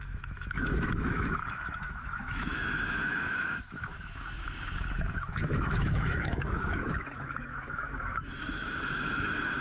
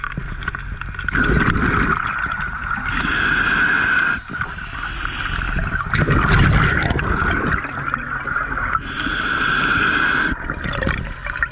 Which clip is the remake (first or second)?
first